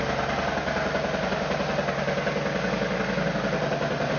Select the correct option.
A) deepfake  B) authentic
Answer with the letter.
B